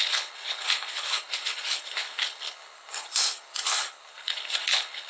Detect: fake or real fake